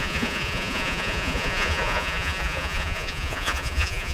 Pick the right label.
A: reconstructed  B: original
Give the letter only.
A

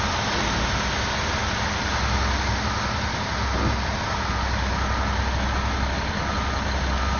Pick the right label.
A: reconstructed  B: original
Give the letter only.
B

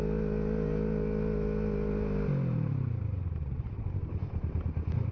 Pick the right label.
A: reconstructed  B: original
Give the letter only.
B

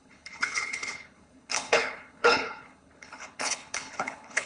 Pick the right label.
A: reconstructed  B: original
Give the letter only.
A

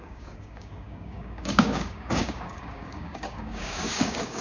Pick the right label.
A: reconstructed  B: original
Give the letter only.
A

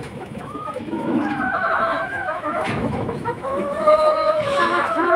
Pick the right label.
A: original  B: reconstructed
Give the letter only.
B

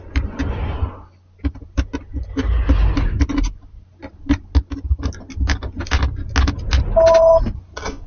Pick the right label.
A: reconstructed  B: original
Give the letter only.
B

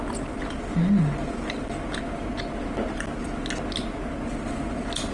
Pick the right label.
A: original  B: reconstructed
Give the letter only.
A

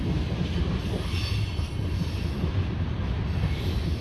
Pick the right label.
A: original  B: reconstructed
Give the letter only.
A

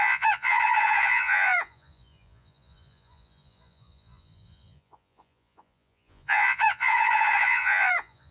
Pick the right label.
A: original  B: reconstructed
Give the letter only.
B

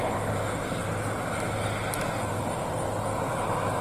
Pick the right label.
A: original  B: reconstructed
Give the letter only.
A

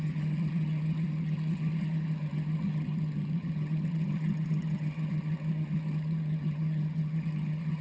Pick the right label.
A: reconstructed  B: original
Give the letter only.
A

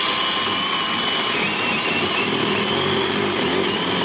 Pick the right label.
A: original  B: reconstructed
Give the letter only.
A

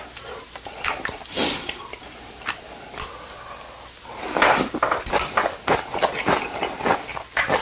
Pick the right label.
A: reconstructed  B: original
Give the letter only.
B